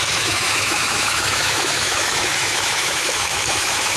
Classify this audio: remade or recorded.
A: remade